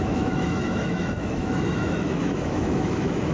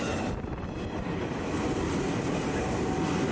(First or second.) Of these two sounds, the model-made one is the first